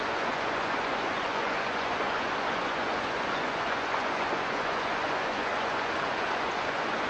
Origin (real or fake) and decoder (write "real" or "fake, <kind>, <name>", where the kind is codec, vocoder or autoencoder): fake, vocoder, Vocos